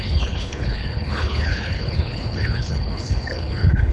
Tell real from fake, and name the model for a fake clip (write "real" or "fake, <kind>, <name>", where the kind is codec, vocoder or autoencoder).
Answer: fake, codec, HILCodec